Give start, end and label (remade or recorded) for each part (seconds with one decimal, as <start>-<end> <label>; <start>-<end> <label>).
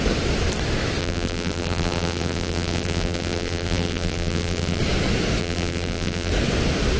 0.0-1.0 recorded; 1.0-4.8 remade; 4.8-5.4 recorded; 5.4-6.3 remade; 6.3-7.0 recorded